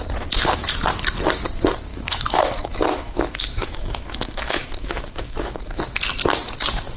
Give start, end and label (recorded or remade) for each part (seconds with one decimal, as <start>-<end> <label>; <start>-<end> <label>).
0.0-1.9 recorded; 1.9-5.8 remade; 5.8-7.0 recorded